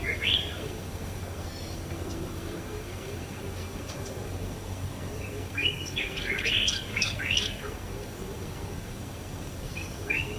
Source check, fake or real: fake